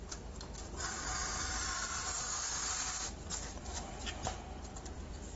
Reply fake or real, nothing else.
fake